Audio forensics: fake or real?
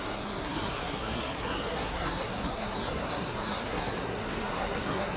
fake